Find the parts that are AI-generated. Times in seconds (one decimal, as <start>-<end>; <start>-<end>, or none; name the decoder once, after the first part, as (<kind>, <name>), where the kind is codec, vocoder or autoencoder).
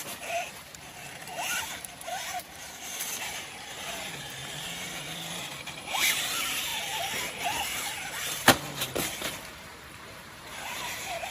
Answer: 0.0-6.7 (vocoder, BigVGAN v2); 7.8-11.3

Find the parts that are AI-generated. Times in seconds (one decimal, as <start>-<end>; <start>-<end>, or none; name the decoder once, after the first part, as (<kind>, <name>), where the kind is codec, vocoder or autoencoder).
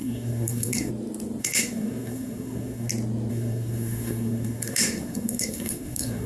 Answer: 0.0-0.9 (codec, SNAC); 1.4-2.9; 3.3-6.3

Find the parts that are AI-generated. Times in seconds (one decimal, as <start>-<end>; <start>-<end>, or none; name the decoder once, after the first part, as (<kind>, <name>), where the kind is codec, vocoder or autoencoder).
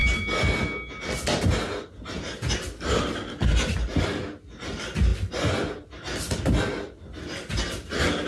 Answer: none